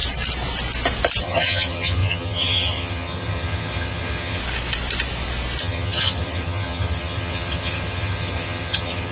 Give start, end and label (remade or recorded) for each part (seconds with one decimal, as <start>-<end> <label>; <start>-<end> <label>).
0.0-1.2 recorded; 1.2-4.4 remade; 4.4-5.6 recorded; 5.6-9.1 remade